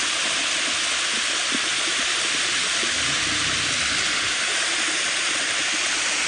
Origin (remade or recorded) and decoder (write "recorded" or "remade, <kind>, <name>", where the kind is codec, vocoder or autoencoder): recorded